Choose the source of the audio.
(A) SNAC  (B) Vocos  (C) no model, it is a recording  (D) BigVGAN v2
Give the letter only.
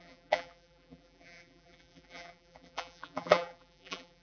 D